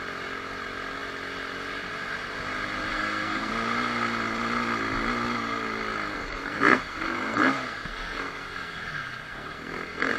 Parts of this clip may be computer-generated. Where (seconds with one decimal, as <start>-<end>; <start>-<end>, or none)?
2.9-3.5; 6.1-10.2